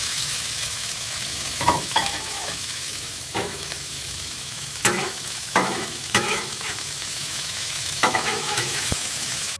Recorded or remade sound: remade